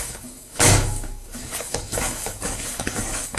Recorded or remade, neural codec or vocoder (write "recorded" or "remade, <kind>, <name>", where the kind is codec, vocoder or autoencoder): remade, codec, DAC